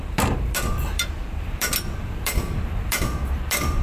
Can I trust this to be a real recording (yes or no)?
no